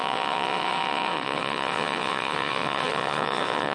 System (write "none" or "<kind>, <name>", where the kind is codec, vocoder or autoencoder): vocoder, WaveNeXt